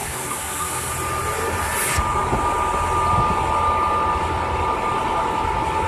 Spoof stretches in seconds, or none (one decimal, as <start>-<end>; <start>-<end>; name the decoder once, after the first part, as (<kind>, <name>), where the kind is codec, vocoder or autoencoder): 0.0-0.9 (codec, SNAC)